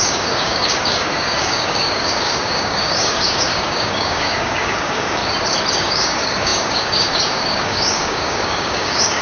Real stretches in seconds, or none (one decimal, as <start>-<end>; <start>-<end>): 5.2-5.7